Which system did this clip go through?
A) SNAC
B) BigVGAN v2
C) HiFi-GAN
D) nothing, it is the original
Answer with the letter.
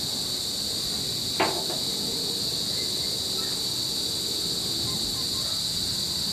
D